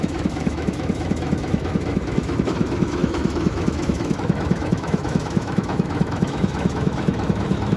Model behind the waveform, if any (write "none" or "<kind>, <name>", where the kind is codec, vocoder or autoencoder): autoencoder, DAC-VAE